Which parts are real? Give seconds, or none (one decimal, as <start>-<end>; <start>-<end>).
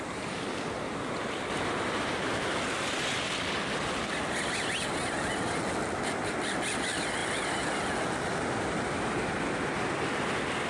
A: 0.0-10.7